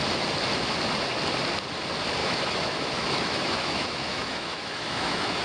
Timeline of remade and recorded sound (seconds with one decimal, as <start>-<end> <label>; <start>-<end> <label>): 0.0-2.2 recorded; 2.2-5.4 remade